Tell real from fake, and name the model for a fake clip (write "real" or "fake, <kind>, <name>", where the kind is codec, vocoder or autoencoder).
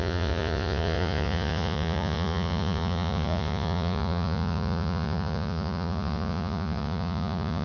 fake, vocoder, Vocos